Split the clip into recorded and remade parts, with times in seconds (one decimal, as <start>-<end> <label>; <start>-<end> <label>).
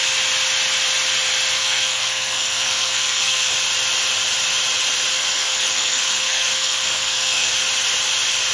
0.0-1.6 recorded; 1.6-3.5 remade; 3.5-5.1 recorded; 5.1-7.6 remade; 7.6-8.5 recorded